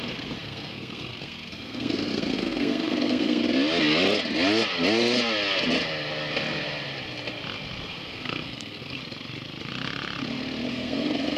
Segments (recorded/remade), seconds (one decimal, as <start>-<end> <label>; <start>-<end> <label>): 0.0-3.4 remade; 3.4-7.9 recorded; 7.9-9.0 remade; 9.0-10.7 recorded; 10.7-11.4 remade